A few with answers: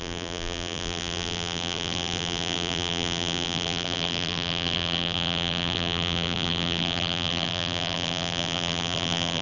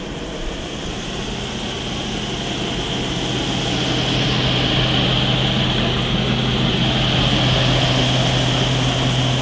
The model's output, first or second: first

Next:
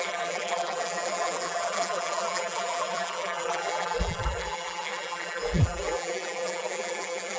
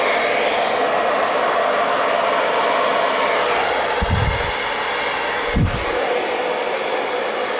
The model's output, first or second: first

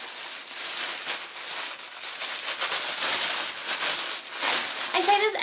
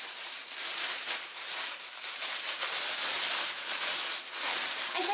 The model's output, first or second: second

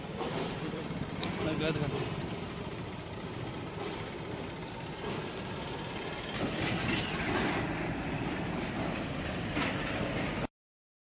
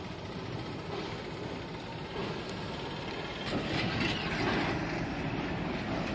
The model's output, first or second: first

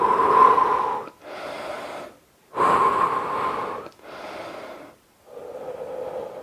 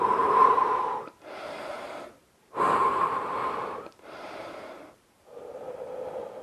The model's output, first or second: second